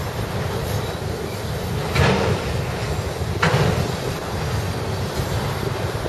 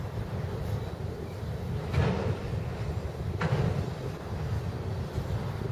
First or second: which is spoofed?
second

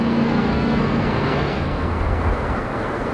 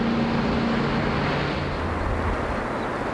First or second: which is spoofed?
first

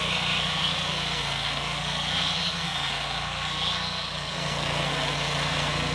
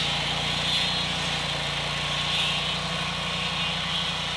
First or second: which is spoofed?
first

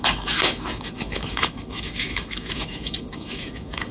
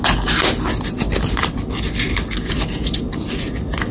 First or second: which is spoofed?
first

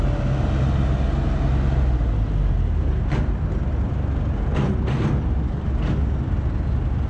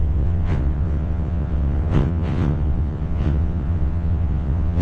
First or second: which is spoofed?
second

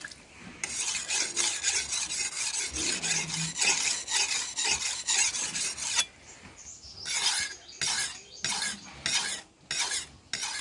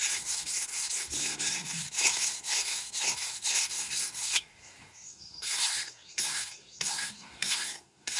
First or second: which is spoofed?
second